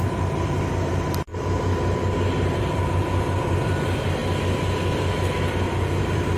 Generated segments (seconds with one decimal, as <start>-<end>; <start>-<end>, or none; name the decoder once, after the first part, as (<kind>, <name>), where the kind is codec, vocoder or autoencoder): 0.0-1.3 (vocoder, BigVGAN v2); 2.6-4.2; 6.0-6.4